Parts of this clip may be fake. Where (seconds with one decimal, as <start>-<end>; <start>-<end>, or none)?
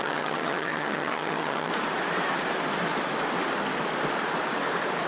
0.0-1.7